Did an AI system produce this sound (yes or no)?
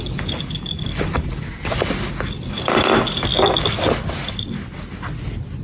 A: no